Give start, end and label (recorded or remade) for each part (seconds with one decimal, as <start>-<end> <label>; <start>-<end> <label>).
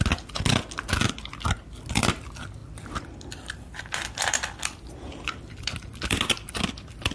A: 0.0-2.6 recorded; 2.6-6.5 remade; 6.5-7.1 recorded